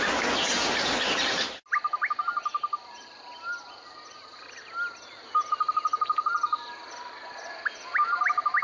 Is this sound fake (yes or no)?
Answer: no